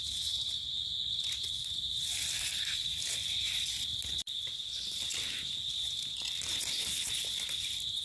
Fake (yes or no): no